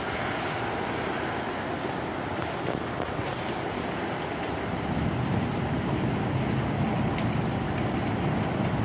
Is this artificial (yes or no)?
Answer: no